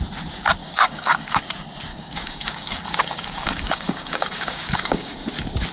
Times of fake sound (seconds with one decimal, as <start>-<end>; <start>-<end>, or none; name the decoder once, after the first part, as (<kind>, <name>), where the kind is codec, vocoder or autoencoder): 0.6-1.4 (codec, DAC); 1.9-5.3

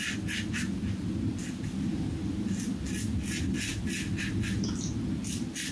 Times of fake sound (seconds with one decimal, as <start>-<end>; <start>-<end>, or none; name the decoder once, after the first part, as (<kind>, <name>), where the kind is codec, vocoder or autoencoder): none

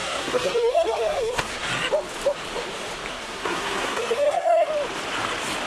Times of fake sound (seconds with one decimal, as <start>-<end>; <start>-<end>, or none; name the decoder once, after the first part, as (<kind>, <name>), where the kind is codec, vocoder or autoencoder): 0.0-1.7 (codec, SNAC); 3.1-4.7

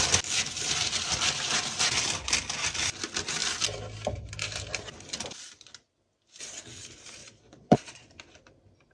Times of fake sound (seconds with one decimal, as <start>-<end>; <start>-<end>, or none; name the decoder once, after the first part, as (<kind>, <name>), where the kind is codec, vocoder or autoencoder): 7.2-8.1 (vocoder, Vocos)

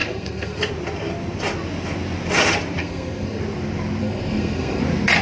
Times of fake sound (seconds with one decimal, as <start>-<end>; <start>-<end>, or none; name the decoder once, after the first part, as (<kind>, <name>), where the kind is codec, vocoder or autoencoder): 0.0-0.6 (codec, SNAC); 2.8-3.4; 4.0-4.8